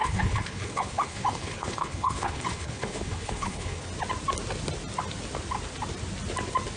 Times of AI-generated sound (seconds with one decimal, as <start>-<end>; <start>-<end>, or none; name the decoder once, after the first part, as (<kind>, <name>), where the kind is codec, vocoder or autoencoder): 0.0-3.9 (codec, HILCodec)